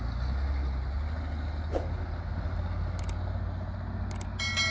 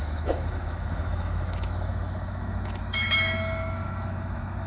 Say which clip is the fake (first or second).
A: second